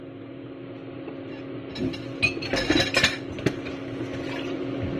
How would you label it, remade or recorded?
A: recorded